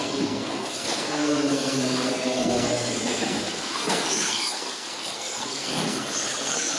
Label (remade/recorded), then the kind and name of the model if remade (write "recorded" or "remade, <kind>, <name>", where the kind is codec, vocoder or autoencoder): remade, codec, SNAC